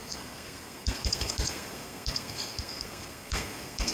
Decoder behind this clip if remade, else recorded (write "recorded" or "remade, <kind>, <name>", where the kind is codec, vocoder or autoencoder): remade, codec, SNAC